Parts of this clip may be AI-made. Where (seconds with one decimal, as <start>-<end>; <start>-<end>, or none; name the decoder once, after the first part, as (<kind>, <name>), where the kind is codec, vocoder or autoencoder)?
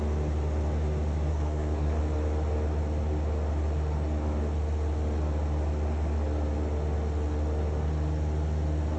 1.3-2.0 (codec, SNAC)